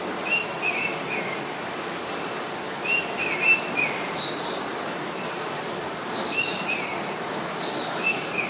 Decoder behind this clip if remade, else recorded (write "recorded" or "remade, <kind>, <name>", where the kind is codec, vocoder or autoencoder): remade, vocoder, BigVGAN v2